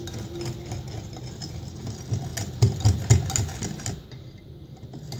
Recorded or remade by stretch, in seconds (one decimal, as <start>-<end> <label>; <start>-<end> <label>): 0.0-5.2 recorded